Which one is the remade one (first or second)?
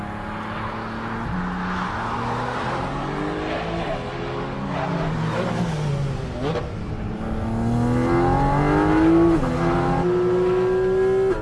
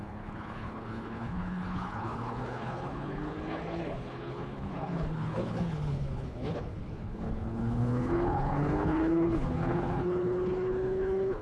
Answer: second